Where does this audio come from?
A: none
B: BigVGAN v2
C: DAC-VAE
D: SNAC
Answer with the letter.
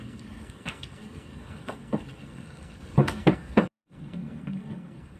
D